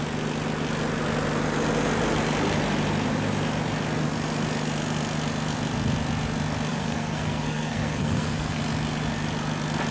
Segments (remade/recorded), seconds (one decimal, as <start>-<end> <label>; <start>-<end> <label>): 0.0-6.7 recorded; 6.7-8.6 remade; 8.6-9.9 recorded